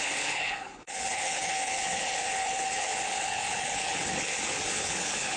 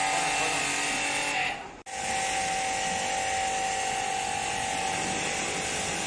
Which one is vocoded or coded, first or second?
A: first